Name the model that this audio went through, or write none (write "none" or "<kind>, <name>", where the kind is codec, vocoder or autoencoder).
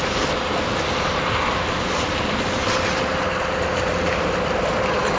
none